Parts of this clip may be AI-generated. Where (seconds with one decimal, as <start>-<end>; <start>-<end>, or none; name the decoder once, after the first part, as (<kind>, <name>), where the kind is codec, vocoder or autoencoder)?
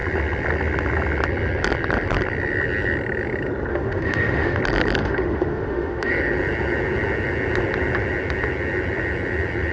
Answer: 3.7-4.6 (autoencoder, DAC-VAE); 5.0-6.1